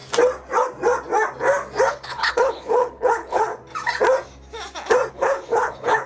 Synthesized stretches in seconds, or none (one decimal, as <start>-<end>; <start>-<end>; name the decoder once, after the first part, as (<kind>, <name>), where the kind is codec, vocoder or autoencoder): 1.9-3.5 (codec, HILCodec); 5.1-6.1